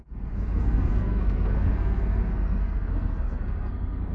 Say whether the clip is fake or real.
fake